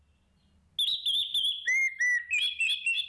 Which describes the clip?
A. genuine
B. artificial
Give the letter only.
A